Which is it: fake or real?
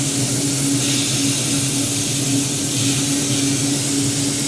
real